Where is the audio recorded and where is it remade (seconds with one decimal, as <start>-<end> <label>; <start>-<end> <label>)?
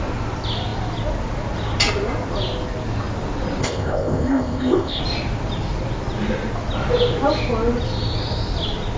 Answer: 0.0-3.6 recorded; 3.6-5.0 remade; 5.0-9.0 recorded